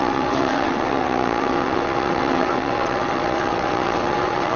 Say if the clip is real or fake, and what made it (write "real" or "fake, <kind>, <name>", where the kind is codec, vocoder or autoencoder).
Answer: fake, vocoder, WaveNeXt